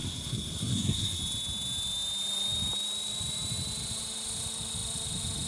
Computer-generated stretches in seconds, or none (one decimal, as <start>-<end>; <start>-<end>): 0.0-1.2